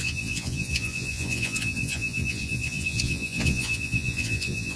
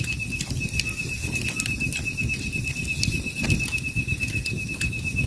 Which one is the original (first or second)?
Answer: second